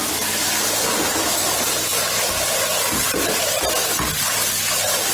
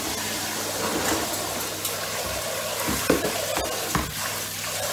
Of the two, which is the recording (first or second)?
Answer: second